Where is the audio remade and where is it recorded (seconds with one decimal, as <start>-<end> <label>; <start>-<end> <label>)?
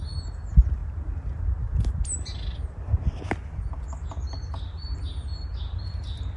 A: 0.0-6.4 recorded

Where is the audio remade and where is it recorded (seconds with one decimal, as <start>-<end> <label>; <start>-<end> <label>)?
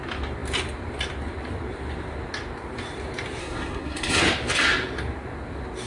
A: 0.0-3.4 recorded; 3.4-4.2 remade; 4.2-5.9 recorded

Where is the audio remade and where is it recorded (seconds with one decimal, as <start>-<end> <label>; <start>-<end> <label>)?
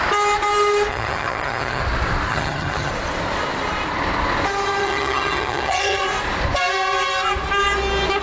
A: 0.0-0.9 recorded; 0.9-1.8 remade; 1.8-2.3 recorded; 2.3-2.9 remade; 2.9-4.8 recorded; 4.8-6.0 remade; 6.0-8.2 recorded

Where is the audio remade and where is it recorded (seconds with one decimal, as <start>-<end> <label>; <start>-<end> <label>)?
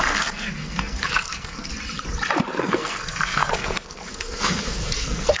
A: 0.0-1.7 remade; 1.7-2.6 recorded; 2.6-5.4 remade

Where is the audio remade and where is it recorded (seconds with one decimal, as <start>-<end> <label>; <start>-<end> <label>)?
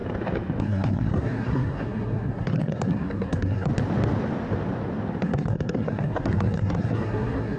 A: 0.0-0.6 recorded; 0.6-3.7 remade; 3.7-5.2 recorded; 5.2-7.6 remade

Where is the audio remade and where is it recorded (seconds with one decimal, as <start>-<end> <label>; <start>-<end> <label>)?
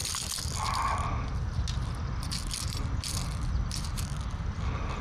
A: 0.0-5.0 recorded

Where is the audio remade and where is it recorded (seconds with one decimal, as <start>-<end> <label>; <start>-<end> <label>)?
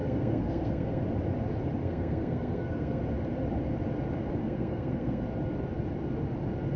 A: 0.0-1.0 remade; 1.0-1.8 recorded; 1.8-3.0 remade; 3.0-4.4 recorded; 4.4-5.2 remade; 5.2-6.8 recorded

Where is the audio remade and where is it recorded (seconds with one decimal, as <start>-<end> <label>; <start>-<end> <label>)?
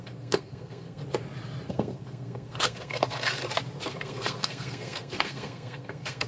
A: 0.0-1.0 remade; 1.0-1.7 recorded; 1.7-3.4 remade; 3.4-3.9 recorded; 3.9-6.3 remade